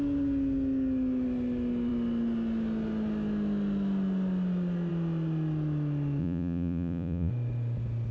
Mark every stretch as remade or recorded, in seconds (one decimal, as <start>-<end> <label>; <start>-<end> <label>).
0.0-6.2 recorded; 6.2-7.3 remade; 7.3-8.1 recorded